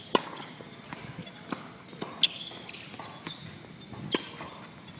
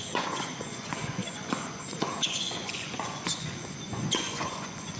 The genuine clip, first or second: first